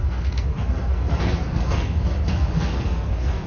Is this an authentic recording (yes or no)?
no